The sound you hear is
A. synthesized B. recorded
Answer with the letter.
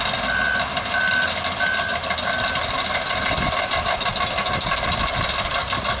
B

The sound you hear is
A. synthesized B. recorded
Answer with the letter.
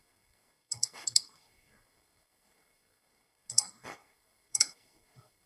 A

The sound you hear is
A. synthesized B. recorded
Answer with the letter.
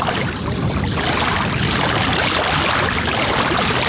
B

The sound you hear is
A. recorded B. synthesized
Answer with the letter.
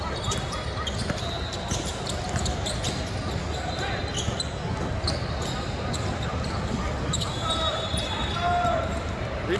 A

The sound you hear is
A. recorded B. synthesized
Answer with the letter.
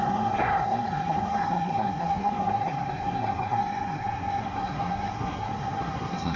B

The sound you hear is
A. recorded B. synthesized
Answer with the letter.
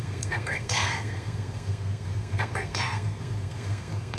B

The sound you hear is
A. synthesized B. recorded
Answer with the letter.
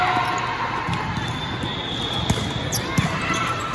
B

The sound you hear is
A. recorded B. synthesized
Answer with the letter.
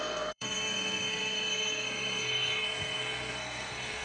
B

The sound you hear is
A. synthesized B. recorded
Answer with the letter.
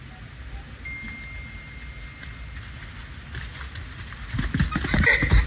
B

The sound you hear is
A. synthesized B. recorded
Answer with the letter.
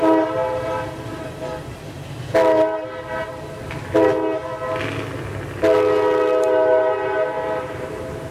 B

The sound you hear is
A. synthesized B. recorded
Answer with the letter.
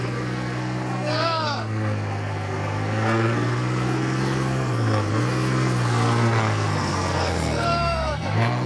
A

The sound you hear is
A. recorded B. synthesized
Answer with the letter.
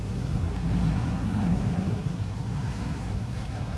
B